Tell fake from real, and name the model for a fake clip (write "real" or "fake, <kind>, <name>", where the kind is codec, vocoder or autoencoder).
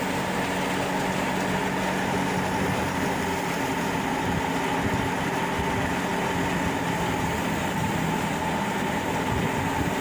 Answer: real